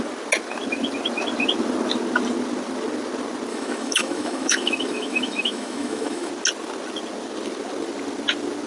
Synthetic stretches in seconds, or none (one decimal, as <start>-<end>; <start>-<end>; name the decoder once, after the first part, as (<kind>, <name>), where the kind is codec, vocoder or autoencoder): 3.5-6.3 (autoencoder, DAC-VAE)